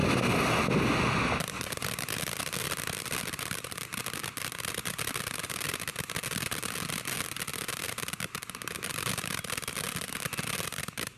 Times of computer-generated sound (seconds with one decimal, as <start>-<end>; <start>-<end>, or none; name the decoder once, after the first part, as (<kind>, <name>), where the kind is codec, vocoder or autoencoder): none

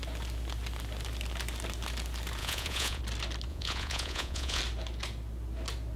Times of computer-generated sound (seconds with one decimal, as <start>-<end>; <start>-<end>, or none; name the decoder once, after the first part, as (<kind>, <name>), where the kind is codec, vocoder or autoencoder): 2.4-3.0 (vocoder, Vocos); 3.5-4.6

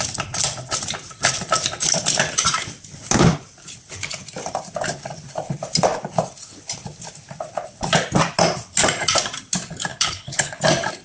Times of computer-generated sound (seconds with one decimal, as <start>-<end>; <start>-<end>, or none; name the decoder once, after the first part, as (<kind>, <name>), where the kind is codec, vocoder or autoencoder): 9.9-10.6 (codec, HILCodec)

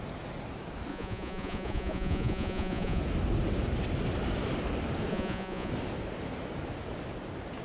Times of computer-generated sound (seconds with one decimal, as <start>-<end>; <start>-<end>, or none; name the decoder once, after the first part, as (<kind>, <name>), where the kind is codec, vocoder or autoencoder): 0.9-3.0 (vocoder, Vocos); 5.1-5.7